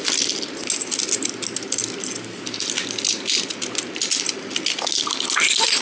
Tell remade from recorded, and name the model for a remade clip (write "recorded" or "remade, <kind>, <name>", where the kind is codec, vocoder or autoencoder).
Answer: recorded